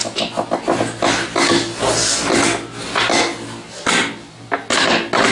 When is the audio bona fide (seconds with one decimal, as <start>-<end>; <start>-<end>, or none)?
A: 0.0-5.3